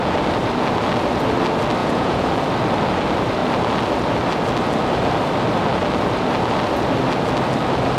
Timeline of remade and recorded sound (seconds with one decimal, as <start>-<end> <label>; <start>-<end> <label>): 0.0-1.8 recorded; 1.8-2.3 remade; 2.3-8.0 recorded